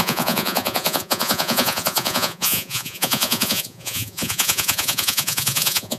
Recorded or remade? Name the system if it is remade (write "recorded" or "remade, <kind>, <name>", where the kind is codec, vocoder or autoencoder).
remade, vocoder, Vocos